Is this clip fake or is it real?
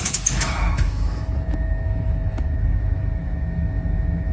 fake